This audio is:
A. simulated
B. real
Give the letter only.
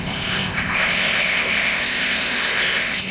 A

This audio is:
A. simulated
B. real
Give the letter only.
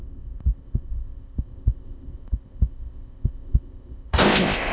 A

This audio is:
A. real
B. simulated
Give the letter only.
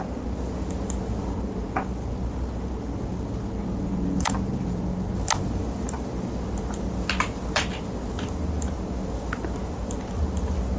A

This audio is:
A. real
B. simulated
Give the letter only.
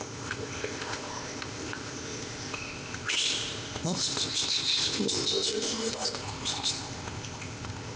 B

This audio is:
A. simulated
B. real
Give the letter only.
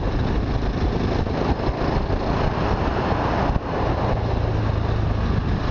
B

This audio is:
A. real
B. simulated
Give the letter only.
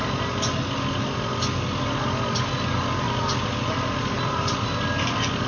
A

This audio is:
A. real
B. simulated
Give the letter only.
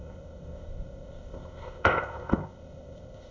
B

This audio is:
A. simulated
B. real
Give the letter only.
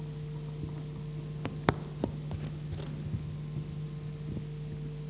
B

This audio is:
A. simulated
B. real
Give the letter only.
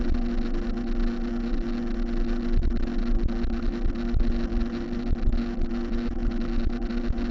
B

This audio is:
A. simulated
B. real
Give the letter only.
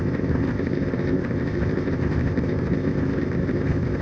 A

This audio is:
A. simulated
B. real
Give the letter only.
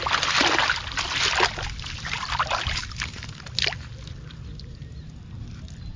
B